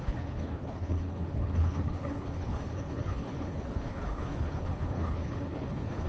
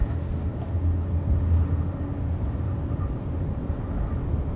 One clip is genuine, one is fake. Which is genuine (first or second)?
second